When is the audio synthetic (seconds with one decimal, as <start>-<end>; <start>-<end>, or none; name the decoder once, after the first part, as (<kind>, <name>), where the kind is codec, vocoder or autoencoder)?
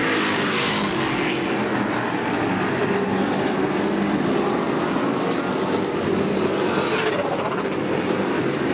0.0-0.8 (codec, DAC)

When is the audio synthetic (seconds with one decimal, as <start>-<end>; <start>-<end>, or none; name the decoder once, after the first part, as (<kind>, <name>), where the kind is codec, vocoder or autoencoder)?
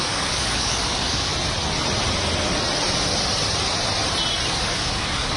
0.0-1.3 (codec, DAC); 4.5-5.4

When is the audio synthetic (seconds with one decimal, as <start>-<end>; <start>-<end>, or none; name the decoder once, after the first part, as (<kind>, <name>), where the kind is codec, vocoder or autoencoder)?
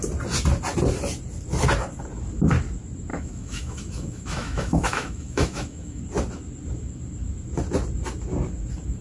3.1-6.0 (autoencoder, DAC-VAE)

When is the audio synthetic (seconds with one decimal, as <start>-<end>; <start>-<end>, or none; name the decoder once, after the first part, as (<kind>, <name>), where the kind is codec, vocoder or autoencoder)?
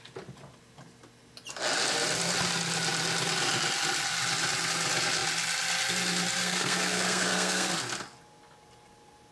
6.4-7.8 (codec, SNAC)